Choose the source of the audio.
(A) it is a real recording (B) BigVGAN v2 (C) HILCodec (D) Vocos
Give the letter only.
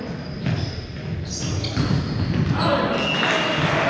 A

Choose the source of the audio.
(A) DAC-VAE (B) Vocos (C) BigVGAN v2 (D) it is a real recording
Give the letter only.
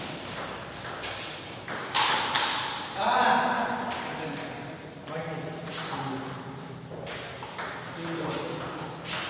D